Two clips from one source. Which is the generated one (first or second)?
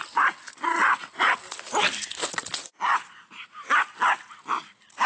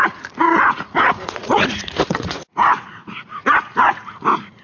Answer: second